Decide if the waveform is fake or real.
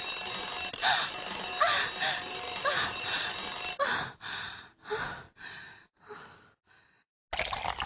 real